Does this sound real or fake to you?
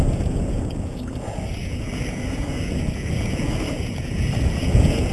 fake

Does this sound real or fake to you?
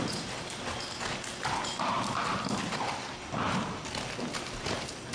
real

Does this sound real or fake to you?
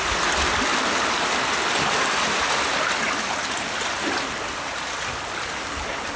real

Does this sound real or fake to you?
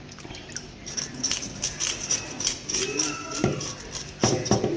real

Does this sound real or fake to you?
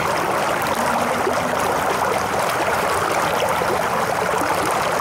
real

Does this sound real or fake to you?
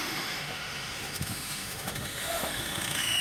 fake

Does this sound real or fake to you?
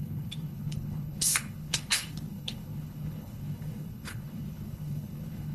fake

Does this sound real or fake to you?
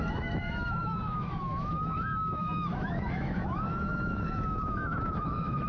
fake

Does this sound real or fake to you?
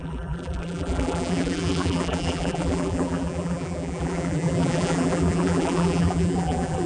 fake